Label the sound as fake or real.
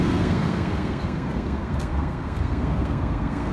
fake